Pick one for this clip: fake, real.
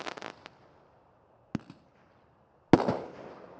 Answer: real